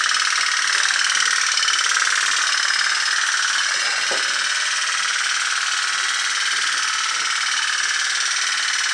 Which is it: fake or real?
real